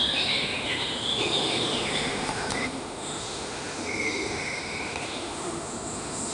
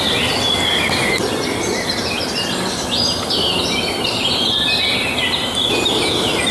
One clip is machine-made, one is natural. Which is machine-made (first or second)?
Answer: first